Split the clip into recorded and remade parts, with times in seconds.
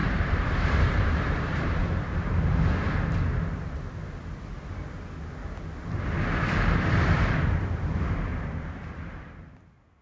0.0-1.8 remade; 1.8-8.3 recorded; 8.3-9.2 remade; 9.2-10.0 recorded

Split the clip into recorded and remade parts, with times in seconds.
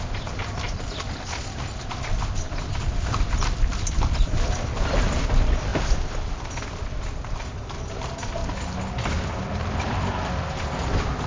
0.0-8.4 remade; 8.4-9.5 recorded; 9.5-11.3 remade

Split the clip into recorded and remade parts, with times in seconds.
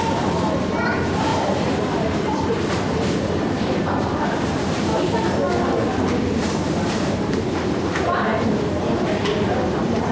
0.0-4.9 remade; 4.9-6.9 recorded; 6.9-8.3 remade; 8.3-9.5 recorded; 9.5-10.1 remade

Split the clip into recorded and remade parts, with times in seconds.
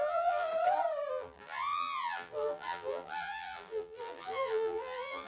0.0-0.5 remade; 0.5-1.1 recorded; 1.1-5.3 remade